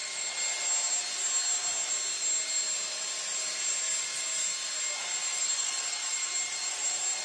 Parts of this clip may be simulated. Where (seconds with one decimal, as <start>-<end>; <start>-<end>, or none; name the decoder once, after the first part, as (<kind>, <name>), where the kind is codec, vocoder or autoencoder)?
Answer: none